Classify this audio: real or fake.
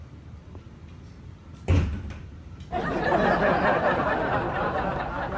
real